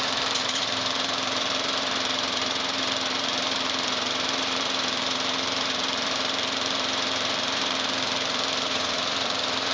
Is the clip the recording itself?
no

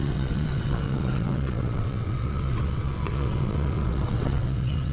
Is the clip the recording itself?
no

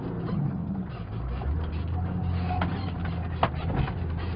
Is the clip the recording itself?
yes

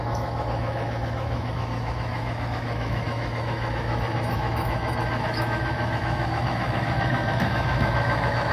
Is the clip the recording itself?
no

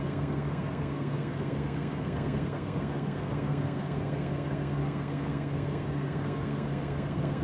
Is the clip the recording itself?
no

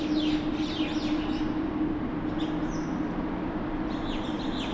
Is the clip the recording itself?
yes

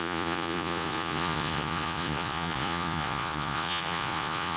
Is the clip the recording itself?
no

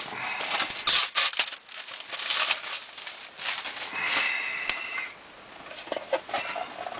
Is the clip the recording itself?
yes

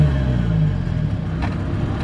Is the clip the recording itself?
yes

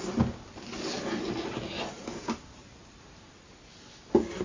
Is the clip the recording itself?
yes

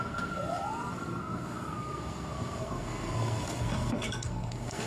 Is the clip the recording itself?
no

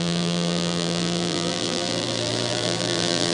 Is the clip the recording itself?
no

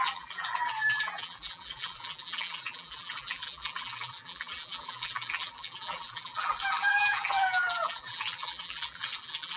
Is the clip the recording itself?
no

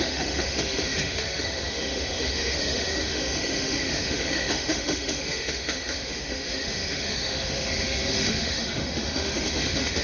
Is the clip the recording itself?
no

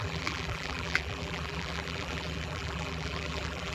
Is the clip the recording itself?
no